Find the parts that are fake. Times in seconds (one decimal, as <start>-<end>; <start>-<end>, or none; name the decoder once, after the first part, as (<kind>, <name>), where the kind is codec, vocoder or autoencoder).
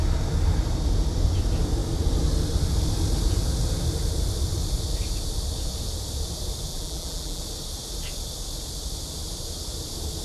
6.7-7.4 (vocoder, BigVGAN v2)